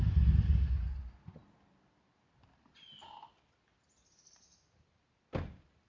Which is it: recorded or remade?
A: recorded